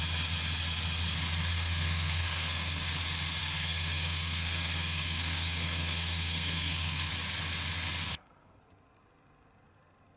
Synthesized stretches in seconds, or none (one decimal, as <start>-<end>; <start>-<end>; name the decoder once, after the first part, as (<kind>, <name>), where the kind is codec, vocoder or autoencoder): 1.5-2.9 (codec, SNAC); 3.4-7.1; 8.1-8.6